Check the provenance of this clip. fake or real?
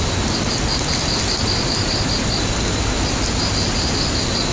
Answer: real